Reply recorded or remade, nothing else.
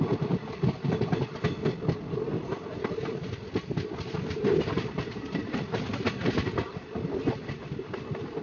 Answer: recorded